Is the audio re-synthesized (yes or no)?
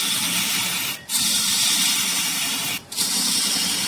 yes